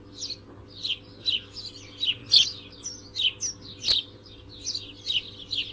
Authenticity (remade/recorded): recorded